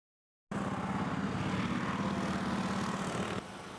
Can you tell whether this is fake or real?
real